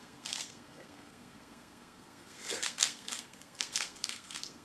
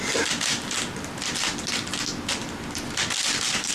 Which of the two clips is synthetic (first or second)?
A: first